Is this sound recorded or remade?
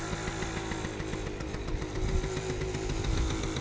recorded